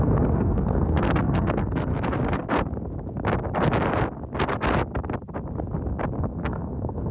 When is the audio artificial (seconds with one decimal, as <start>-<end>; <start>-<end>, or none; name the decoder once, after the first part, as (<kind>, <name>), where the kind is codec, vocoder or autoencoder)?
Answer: 0.0-1.9 (codec, SNAC); 6.2-7.1